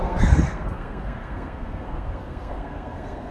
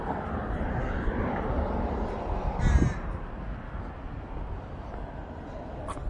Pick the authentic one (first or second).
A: second